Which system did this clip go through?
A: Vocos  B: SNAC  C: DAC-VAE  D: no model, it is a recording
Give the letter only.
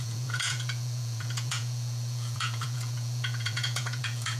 A